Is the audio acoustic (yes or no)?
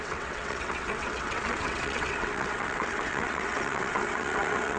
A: no